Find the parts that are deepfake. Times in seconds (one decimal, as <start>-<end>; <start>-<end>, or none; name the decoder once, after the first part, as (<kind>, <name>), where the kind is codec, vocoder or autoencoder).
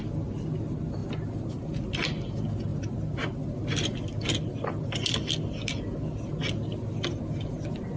none